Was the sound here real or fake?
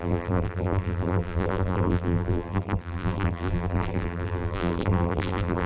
fake